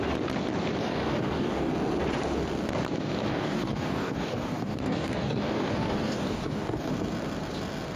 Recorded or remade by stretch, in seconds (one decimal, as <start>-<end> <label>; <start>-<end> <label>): 0.0-0.8 recorded; 0.8-1.7 remade; 1.7-3.3 recorded; 3.3-6.9 remade; 6.9-8.0 recorded